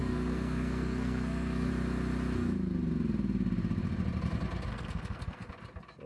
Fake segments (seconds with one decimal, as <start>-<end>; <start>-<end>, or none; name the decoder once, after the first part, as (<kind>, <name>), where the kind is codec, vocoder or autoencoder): 0.0-1.7 (codec, SNAC); 4.7-5.5